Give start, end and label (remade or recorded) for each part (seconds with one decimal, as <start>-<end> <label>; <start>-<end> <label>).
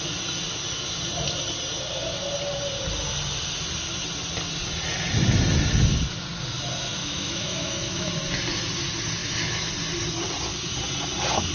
0.0-7.0 recorded; 7.0-8.1 remade; 8.1-9.2 recorded; 9.2-9.7 remade; 9.7-11.5 recorded